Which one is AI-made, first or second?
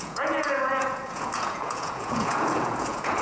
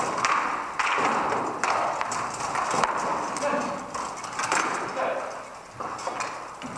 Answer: first